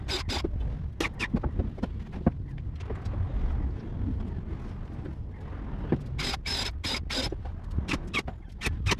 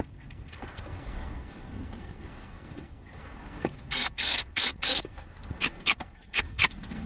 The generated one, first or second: second